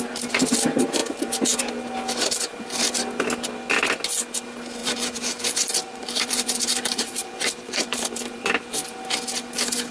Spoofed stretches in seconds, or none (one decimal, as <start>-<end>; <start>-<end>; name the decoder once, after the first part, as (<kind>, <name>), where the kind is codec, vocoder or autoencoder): 4.8-8.5 (vocoder, BigVGAN v2)